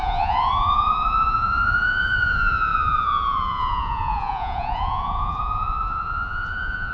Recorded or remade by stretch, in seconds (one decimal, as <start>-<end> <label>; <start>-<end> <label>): 0.0-6.9 remade